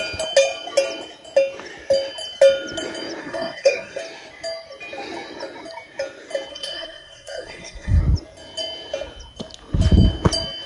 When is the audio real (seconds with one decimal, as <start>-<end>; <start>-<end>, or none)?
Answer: 0.0-3.2; 4.0-6.5; 8.0-10.7

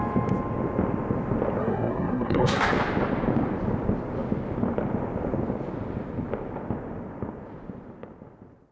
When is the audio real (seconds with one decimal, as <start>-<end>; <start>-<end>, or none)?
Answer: 0.0-1.6; 2.7-8.7

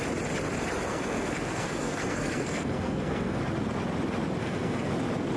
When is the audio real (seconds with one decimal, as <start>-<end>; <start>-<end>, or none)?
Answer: 0.0-0.9; 3.4-4.4; 4.9-5.4

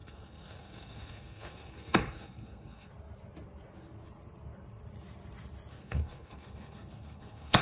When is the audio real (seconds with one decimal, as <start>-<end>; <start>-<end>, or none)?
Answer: 2.9-5.7

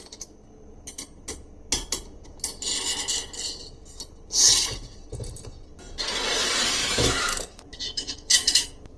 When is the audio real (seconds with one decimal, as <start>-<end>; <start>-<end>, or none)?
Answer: 0.0-6.8

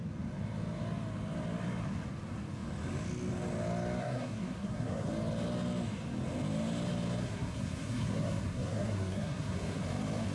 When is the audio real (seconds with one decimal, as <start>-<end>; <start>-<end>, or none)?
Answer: 0.0-4.0; 5.1-7.2; 9.8-10.3

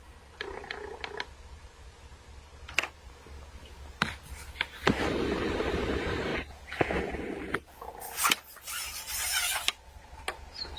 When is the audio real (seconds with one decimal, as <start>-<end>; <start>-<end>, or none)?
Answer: 0.0-10.8